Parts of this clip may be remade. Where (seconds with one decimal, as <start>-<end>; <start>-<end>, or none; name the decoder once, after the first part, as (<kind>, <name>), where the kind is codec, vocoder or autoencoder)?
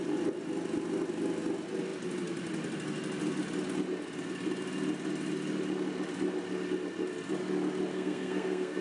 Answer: 7.9-8.8 (codec, SNAC)